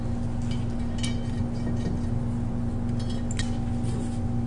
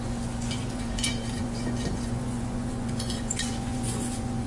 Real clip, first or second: first